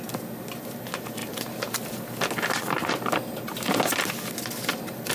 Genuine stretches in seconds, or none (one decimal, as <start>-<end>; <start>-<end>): 0.0-5.1